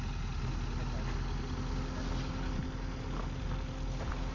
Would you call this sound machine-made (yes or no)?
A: no